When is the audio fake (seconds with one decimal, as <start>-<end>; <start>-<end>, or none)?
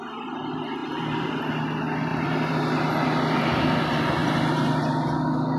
0.8-1.4; 2.1-2.6